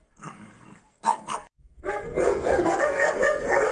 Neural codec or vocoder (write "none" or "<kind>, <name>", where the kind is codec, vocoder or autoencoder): codec, SNAC